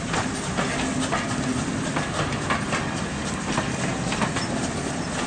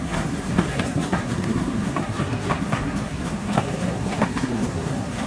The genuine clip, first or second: first